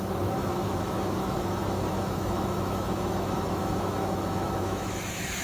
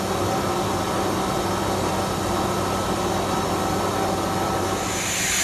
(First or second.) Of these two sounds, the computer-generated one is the first